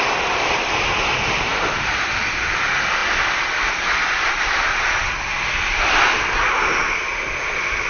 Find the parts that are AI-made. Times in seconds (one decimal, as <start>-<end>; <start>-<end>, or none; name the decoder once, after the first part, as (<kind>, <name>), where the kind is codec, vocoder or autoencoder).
3.0-4.3 (vocoder, BigVGAN v2); 5.3-6.1